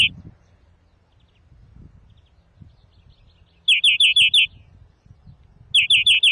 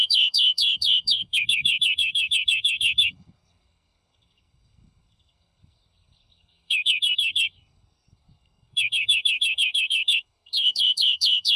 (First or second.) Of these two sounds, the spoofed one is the second